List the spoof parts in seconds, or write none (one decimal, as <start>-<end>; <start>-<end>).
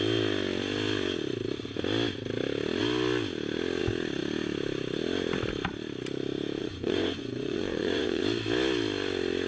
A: 6.6-8.2